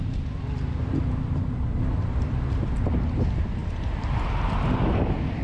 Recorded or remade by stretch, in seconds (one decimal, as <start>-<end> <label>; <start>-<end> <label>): 0.0-1.9 recorded; 1.9-2.7 remade; 2.7-3.6 recorded; 3.6-4.2 remade; 4.2-5.4 recorded

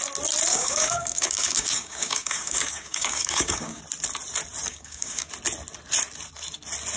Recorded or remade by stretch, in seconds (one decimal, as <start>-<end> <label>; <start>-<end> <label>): 0.0-0.5 recorded; 0.5-3.8 remade; 3.8-4.7 recorded; 4.7-5.3 remade; 5.3-7.0 recorded